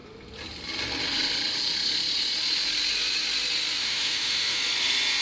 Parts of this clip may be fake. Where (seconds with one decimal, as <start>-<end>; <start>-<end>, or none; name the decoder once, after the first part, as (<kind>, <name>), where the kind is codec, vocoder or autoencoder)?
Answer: 3.8-4.6 (autoencoder, DAC-VAE)